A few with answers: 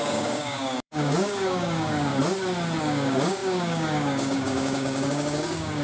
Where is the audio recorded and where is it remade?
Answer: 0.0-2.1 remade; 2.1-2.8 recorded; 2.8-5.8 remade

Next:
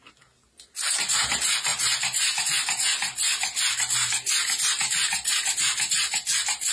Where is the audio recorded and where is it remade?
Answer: 0.0-6.7 recorded

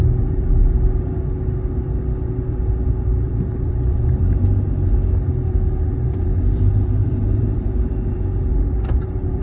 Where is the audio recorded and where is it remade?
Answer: 0.0-2.9 recorded; 2.9-4.5 remade; 4.5-6.2 recorded; 6.2-9.4 remade